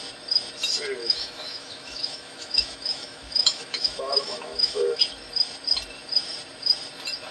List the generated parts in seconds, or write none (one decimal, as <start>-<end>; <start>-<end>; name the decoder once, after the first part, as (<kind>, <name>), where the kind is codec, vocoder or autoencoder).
1.0-5.0 (autoencoder, DAC-VAE)